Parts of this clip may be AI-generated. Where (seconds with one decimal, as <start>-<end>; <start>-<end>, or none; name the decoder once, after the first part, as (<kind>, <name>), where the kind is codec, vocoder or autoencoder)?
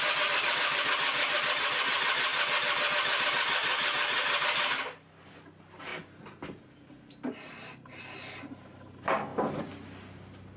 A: none